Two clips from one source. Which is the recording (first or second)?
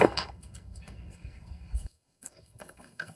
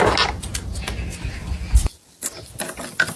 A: second